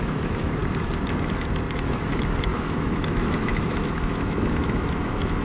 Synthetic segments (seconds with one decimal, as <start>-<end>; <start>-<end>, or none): 0.0-0.6; 1.7-5.4